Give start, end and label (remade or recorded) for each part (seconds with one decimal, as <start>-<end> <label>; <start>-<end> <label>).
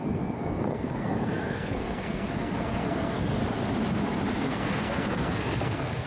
0.0-3.4 remade; 3.4-4.4 recorded; 4.4-6.1 remade